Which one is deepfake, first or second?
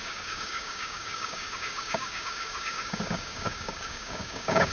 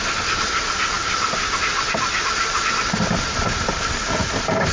first